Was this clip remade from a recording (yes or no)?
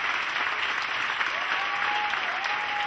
no